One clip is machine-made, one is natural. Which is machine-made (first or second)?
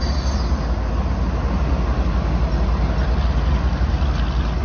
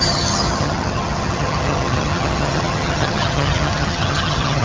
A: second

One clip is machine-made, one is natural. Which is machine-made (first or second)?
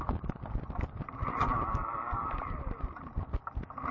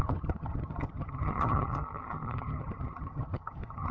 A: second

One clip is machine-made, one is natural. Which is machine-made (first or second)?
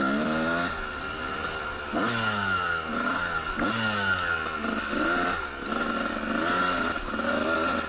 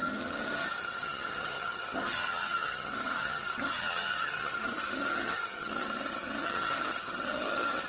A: second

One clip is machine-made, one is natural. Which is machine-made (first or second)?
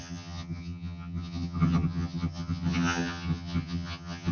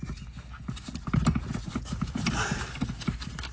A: first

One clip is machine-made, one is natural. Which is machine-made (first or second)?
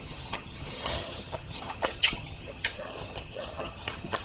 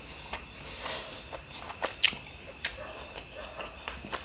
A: first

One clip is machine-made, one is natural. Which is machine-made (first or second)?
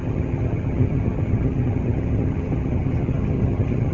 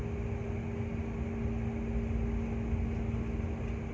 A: first